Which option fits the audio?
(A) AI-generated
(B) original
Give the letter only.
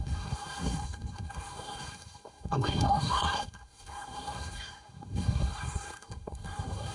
A